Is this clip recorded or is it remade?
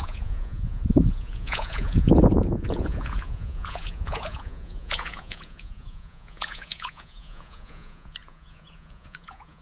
remade